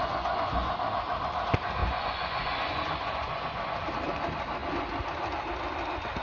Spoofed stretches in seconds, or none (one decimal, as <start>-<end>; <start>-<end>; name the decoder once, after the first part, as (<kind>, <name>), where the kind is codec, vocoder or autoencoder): 0.0-0.7 (vocoder, Vocos); 1.8-3.8